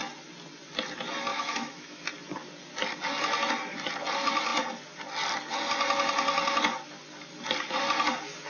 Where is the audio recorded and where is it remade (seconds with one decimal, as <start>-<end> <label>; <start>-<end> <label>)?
0.0-1.3 recorded; 1.3-2.0 remade; 2.0-8.5 recorded

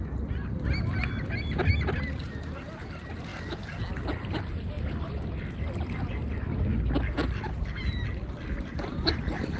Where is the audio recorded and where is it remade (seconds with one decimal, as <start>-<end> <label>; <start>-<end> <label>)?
0.0-9.6 recorded

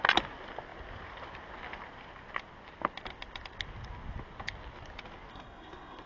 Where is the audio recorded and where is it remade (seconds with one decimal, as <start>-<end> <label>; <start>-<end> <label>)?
0.0-5.3 recorded; 5.3-6.1 remade

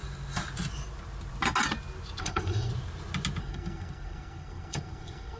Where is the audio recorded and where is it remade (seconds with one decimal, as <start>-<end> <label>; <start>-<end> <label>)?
0.0-2.2 recorded; 2.2-2.7 remade; 2.7-3.4 recorded; 3.4-5.4 remade

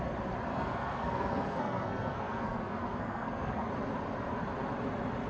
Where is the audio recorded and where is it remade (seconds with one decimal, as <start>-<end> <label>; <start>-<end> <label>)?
0.0-0.5 recorded; 0.5-3.7 remade; 3.7-5.3 recorded

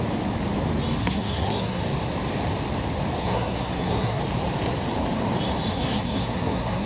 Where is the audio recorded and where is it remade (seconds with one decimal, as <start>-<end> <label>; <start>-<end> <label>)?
0.0-1.0 recorded; 1.0-1.8 remade; 1.8-3.2 recorded; 3.2-4.2 remade; 4.2-5.7 recorded; 5.7-6.9 remade

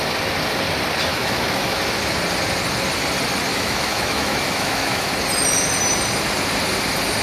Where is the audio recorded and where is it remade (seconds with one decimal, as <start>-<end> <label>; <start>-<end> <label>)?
0.0-1.1 recorded; 1.1-1.8 remade; 1.8-3.5 recorded; 3.5-5.1 remade; 5.1-7.2 recorded